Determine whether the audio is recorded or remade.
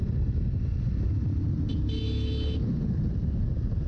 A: recorded